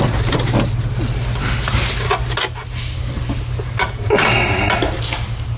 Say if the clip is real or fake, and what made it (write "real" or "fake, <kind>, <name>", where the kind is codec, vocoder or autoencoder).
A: real